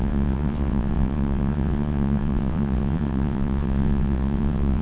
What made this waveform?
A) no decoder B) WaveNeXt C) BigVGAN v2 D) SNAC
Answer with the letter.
B